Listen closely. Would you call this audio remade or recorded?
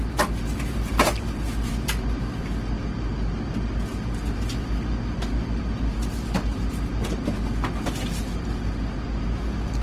recorded